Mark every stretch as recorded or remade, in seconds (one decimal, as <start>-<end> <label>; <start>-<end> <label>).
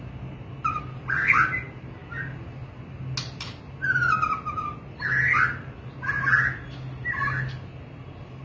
0.0-8.4 recorded